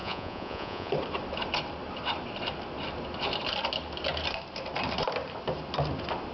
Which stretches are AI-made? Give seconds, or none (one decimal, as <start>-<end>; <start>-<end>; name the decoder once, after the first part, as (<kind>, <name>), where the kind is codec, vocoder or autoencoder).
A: 0.0-0.9 (vocoder, Vocos)